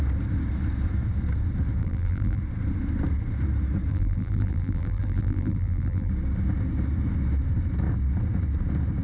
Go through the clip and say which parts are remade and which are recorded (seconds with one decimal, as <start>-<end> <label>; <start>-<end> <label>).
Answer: 0.0-1.8 recorded; 1.8-2.4 remade; 2.4-3.9 recorded; 3.9-6.1 remade; 6.1-9.0 recorded